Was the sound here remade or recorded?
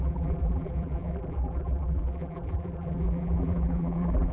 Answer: remade